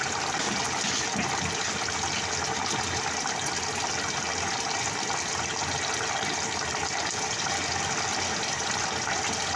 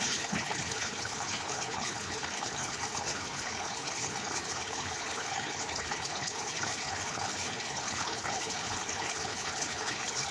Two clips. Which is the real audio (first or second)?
first